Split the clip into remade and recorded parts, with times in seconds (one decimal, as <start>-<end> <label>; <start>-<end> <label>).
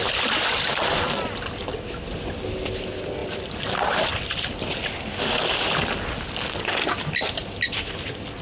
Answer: 0.0-8.4 recorded